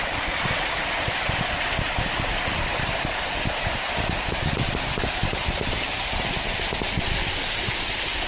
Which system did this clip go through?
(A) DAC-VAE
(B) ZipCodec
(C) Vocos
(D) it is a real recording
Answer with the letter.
D